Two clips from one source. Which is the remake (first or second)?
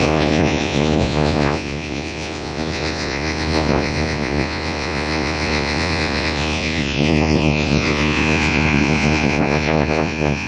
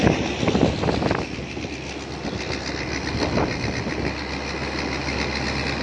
first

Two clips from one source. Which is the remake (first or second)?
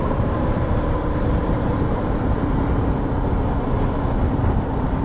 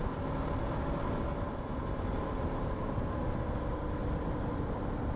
first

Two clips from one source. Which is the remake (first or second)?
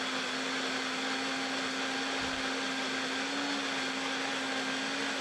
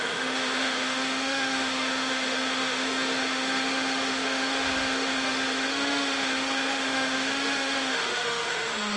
second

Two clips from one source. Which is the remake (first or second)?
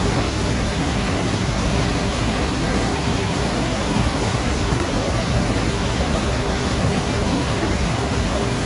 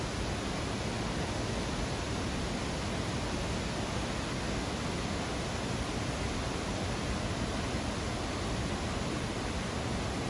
first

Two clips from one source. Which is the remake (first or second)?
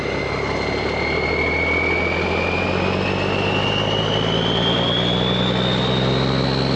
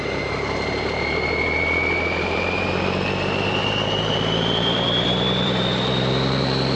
second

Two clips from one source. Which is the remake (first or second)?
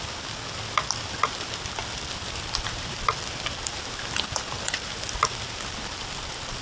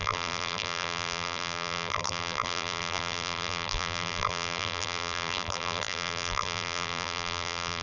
second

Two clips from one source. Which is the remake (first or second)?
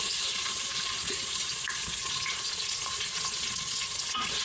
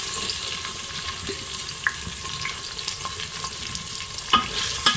first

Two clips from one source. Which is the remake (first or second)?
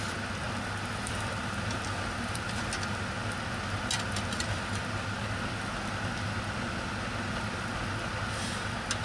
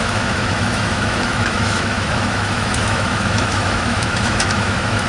second